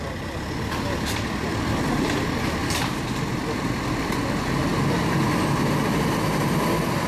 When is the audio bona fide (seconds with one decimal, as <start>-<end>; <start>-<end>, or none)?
4.7-5.7